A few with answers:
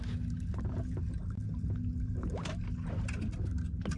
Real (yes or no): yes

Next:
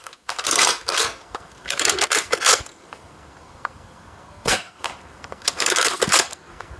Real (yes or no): no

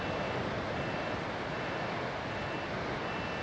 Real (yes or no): yes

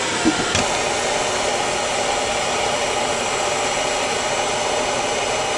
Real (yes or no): yes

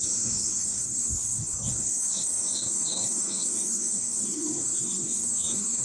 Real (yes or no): no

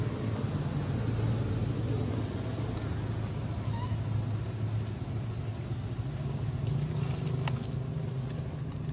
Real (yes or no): yes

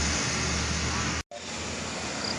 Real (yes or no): yes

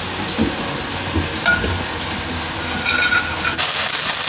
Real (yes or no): yes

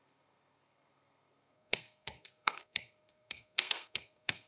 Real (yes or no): no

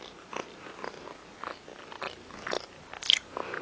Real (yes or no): yes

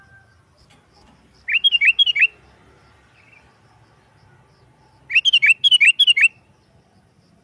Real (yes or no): yes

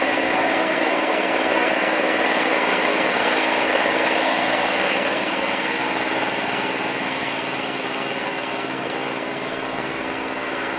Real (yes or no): no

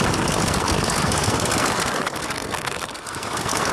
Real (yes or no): no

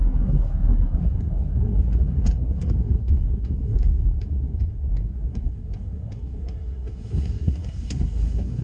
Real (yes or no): no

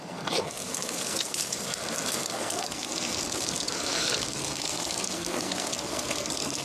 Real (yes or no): no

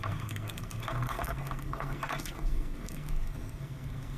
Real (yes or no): no